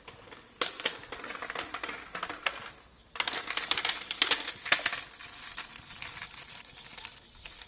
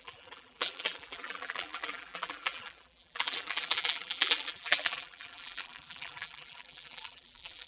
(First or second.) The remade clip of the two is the second